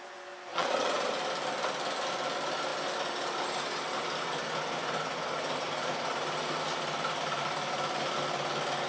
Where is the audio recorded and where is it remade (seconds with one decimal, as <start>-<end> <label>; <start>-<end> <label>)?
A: 0.0-0.5 recorded; 0.5-1.1 remade; 1.1-8.9 recorded